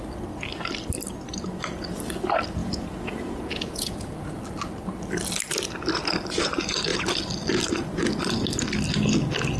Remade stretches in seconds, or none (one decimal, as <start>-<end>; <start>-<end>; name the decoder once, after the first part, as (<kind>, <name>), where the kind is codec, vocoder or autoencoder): 2.6-4.4 (vocoder, Vocos)